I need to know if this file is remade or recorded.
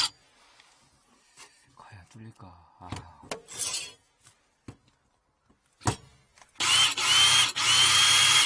recorded